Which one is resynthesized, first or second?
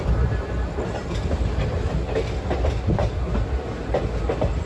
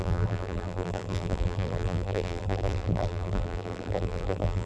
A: second